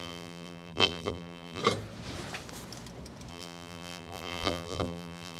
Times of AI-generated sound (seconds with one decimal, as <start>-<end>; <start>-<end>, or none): 0.0-1.6; 3.3-5.4